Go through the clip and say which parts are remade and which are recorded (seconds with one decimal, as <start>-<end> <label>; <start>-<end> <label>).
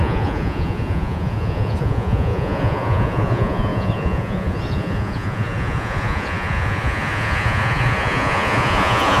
0.0-9.2 remade